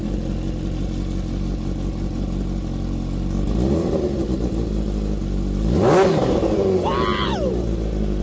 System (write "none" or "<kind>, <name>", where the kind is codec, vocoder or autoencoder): none